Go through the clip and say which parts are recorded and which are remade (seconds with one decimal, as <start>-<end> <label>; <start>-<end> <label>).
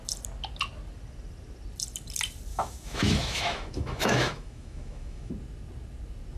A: 0.0-2.5 recorded; 2.5-5.3 remade; 5.3-6.4 recorded